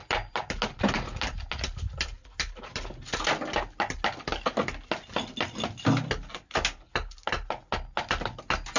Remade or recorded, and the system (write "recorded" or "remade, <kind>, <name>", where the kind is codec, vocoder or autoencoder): recorded